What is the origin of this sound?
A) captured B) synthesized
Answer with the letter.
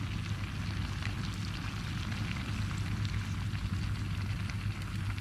A